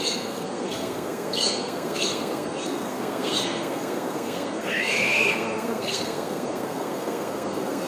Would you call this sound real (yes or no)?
no